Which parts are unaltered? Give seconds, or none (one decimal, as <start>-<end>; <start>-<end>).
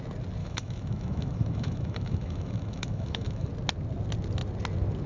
0.0-0.4; 3.5-5.1